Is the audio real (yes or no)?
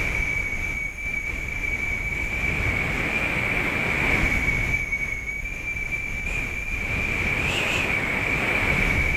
yes